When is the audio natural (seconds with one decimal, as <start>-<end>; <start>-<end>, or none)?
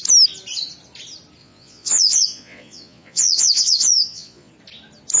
0.0-1.4; 4.5-5.2